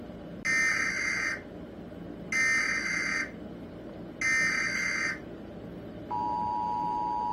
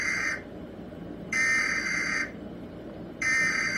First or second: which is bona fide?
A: first